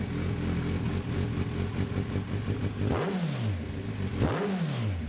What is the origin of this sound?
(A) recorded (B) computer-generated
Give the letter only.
A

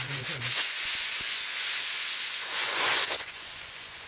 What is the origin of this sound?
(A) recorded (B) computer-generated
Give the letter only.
B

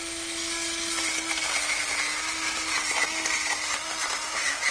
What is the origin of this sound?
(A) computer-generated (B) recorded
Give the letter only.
B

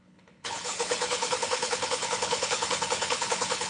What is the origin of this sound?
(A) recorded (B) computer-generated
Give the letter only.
B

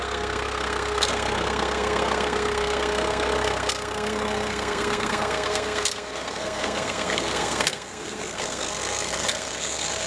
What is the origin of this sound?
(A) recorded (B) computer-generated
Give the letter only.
B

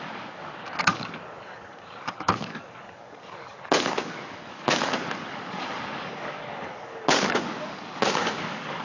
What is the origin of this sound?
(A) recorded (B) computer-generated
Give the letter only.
B